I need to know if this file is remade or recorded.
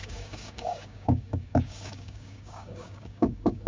remade